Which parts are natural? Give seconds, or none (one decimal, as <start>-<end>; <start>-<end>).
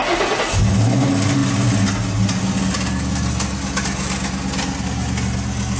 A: 0.0-5.8